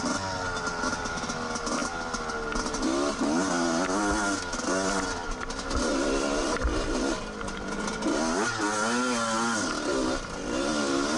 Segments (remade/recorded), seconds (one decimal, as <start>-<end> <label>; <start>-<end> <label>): 0.0-11.2 recorded